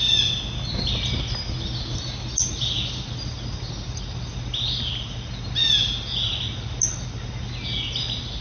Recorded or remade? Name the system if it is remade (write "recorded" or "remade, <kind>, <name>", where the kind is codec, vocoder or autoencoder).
recorded